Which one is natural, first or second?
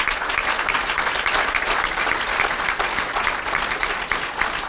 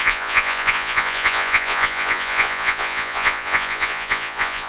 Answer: first